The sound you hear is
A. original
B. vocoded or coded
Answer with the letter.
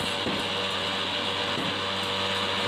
A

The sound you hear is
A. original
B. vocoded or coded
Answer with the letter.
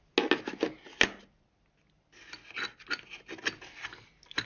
A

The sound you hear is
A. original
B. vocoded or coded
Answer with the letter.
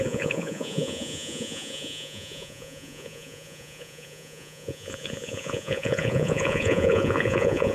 B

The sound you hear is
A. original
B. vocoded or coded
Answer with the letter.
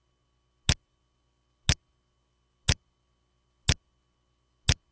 A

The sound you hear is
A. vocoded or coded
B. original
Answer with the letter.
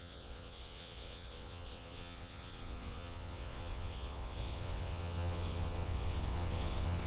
A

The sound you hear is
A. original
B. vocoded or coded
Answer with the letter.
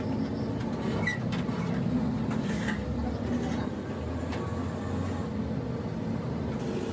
A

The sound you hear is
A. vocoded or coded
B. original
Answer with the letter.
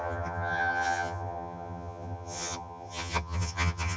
A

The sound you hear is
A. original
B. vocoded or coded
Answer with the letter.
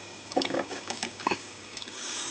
B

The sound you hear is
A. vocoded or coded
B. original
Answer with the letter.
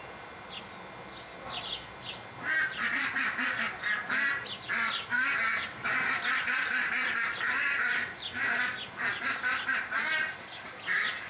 B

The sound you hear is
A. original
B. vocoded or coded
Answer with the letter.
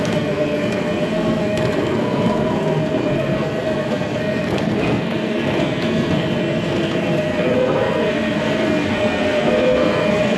B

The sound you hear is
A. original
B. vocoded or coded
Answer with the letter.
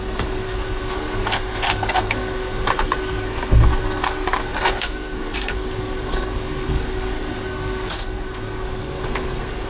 B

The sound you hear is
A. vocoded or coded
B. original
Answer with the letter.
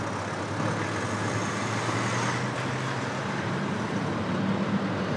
B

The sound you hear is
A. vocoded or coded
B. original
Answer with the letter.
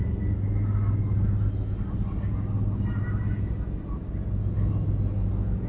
B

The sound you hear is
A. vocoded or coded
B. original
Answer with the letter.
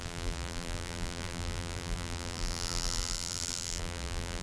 A